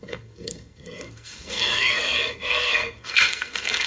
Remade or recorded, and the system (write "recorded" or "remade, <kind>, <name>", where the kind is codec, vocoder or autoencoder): remade, codec, SNAC